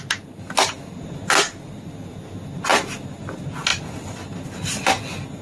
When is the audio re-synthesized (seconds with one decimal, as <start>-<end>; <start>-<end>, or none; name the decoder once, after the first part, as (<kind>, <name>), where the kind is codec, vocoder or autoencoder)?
none